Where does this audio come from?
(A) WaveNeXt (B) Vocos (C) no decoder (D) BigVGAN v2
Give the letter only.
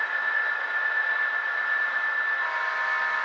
C